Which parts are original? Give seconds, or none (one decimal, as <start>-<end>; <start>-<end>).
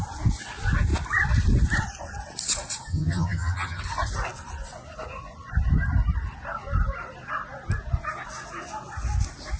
0.0-2.9; 3.8-9.6